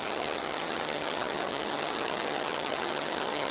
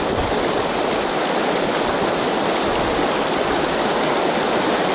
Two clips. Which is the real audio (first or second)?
second